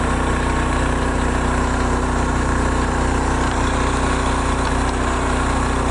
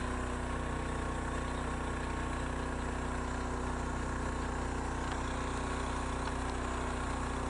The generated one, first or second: first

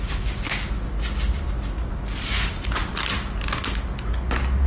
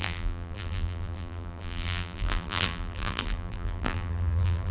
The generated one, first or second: second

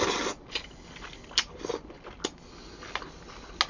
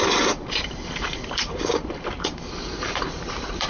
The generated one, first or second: second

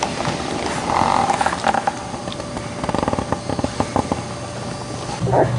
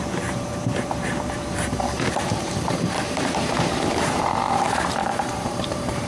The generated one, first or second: second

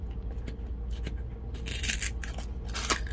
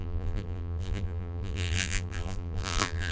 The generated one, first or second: second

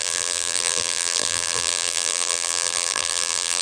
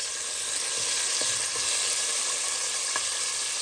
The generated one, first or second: first